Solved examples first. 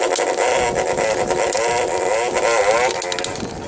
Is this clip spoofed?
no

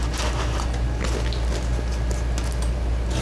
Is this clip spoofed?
no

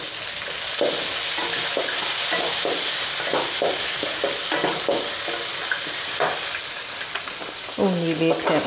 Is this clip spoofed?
no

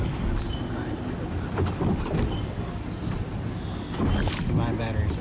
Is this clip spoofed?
no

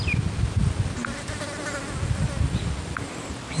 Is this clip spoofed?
no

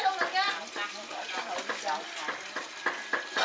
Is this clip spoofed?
no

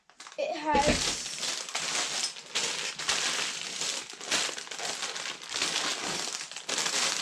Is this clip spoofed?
no